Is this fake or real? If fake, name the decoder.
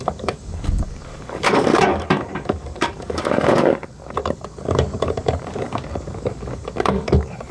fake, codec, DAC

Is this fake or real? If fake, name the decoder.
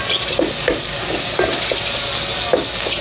real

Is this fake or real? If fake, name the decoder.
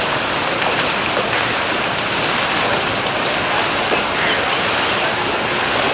real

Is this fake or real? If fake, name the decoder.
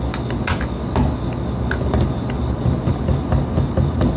real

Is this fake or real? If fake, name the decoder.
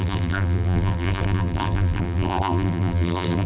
fake, vocoder, BigVGAN v2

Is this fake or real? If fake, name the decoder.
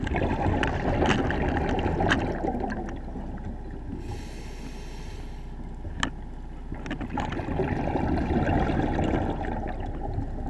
real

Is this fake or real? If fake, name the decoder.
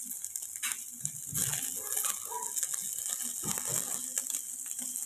real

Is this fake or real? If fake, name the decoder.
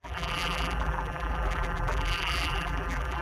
fake, vocoder, BigVGAN v2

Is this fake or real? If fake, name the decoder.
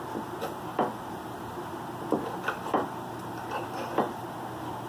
real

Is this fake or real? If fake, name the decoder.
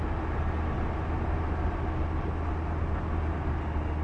real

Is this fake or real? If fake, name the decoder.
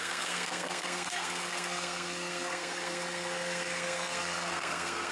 fake, codec, SNAC